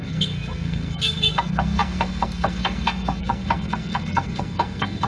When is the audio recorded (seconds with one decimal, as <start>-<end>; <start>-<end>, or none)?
none